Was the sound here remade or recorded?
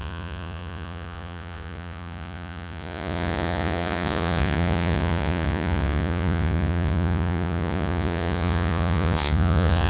remade